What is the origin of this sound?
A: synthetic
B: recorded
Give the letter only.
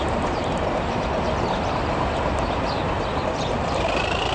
A